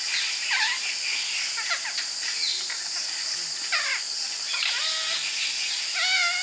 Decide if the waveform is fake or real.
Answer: real